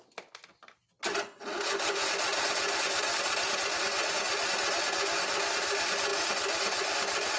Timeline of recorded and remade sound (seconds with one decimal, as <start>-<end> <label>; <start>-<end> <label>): 0.0-7.4 recorded